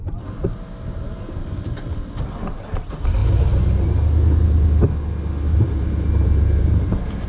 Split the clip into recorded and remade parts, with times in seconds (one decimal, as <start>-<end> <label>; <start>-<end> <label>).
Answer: 0.0-5.5 recorded; 5.5-7.3 remade